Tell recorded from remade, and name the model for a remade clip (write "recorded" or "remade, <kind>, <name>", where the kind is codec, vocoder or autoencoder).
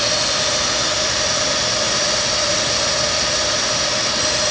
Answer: recorded